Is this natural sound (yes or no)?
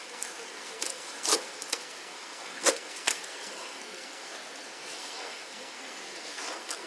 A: no